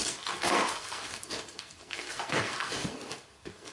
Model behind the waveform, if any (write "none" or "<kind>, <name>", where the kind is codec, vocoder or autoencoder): codec, SNAC